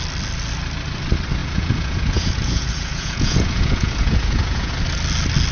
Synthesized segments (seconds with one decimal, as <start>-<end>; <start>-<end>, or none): 1.4-4.7

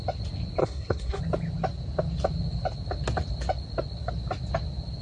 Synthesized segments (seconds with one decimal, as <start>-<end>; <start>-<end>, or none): 0.6-1.2

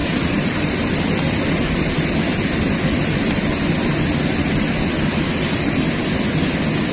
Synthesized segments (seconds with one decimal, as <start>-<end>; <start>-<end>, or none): 0.0-4.0

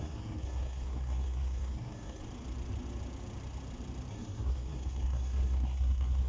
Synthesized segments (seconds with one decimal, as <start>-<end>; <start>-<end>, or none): 0.0-2.2; 4.1-6.3

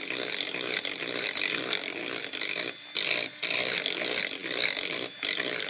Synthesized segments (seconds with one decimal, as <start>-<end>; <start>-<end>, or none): none

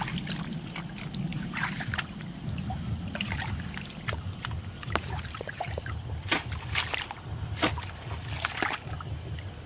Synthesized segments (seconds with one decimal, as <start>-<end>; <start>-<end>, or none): 1.3-5.9

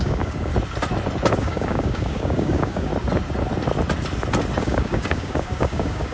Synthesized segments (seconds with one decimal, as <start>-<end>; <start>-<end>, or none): 0.0-0.5; 1.4-2.9; 4.6-6.1

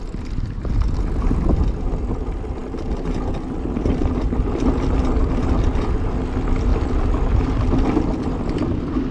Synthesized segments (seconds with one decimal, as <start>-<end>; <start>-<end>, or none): none